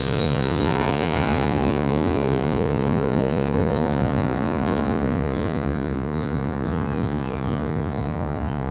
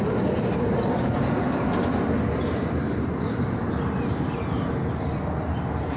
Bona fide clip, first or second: second